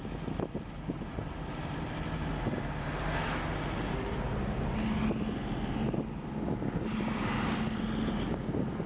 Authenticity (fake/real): real